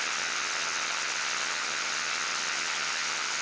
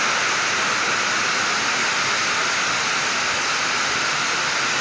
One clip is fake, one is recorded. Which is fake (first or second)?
first